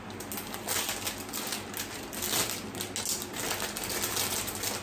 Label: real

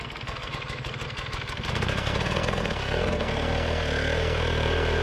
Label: fake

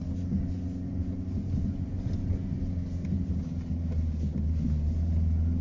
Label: real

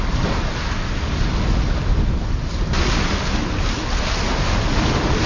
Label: real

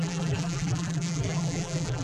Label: fake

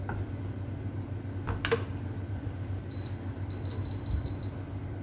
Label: real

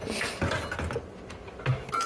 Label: real